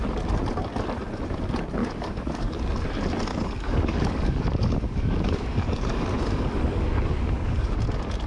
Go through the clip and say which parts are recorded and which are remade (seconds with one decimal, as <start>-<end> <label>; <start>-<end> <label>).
0.0-1.8 recorded; 1.8-2.6 remade; 2.6-3.3 recorded; 3.3-7.8 remade; 7.8-8.3 recorded